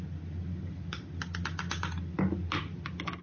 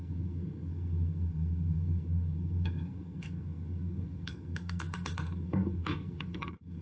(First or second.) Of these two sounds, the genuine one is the first